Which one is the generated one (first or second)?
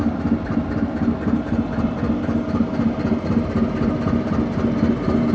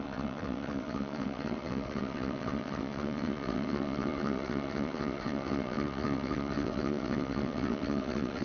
second